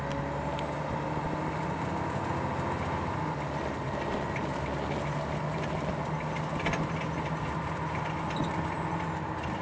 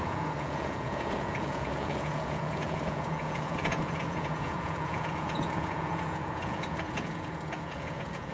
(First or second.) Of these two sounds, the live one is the first